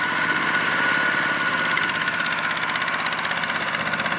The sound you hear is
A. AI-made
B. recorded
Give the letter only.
B